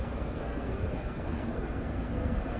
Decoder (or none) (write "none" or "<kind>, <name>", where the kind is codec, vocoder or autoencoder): codec, SNAC